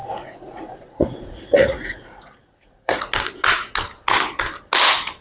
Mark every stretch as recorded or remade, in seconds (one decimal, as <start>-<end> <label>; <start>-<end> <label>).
0.0-3.1 remade; 3.1-5.2 recorded